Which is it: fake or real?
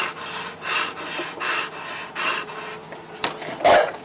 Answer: real